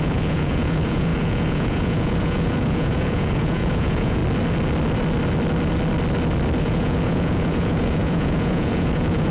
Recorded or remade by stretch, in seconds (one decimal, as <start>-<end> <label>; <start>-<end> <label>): 0.0-4.2 remade; 4.2-6.6 recorded; 6.6-9.3 remade